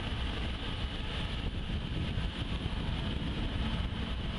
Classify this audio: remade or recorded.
recorded